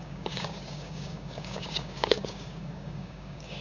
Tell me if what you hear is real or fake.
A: fake